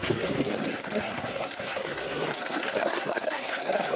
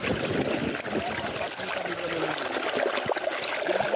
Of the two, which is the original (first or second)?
second